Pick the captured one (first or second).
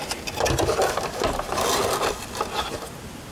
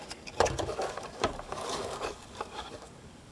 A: first